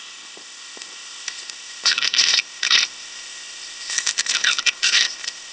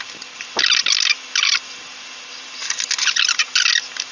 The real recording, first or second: second